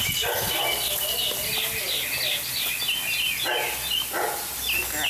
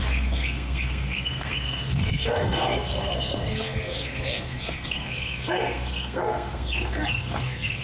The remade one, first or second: second